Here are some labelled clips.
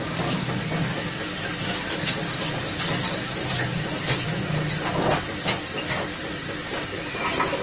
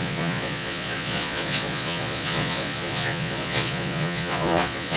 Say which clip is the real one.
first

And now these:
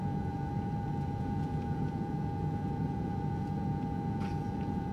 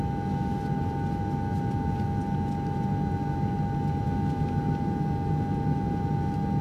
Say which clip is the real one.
second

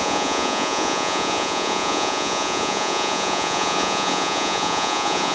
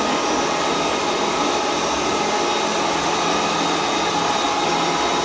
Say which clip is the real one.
second